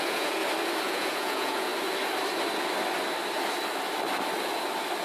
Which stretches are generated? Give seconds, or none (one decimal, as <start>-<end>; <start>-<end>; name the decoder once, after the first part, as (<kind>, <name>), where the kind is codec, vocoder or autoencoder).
0.0-0.4 (vocoder, Vocos); 0.9-1.7